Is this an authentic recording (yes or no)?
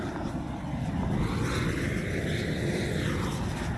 yes